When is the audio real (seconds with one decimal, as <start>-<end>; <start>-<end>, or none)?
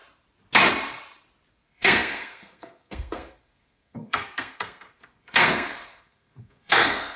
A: 0.0-1.5